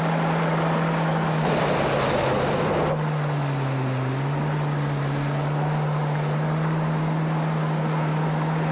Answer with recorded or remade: recorded